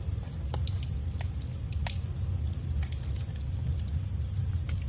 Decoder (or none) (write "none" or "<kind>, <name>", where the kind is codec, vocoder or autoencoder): none